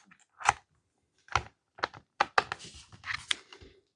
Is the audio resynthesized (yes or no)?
no